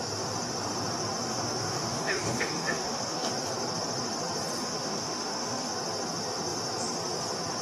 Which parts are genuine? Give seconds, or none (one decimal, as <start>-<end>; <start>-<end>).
0.0-1.3; 3.3-4.6; 5.7-7.6